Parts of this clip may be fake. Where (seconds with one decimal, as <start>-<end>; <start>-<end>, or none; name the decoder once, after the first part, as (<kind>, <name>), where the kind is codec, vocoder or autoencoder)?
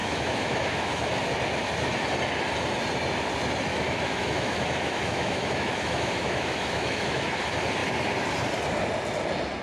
0.0-1.2 (autoencoder, DAC-VAE); 3.7-7.2